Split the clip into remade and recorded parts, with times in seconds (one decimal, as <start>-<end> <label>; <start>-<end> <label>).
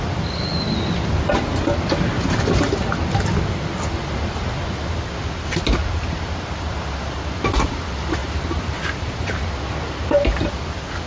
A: 0.0-8.2 recorded; 8.2-9.5 remade; 9.5-11.1 recorded